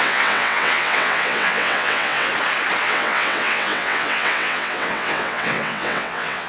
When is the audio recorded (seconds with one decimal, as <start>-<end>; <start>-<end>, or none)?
2.3-2.8